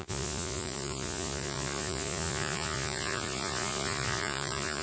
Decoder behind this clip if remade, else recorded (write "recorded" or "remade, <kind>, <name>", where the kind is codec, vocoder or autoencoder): remade, vocoder, Vocos